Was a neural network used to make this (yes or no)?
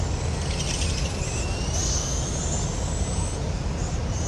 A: no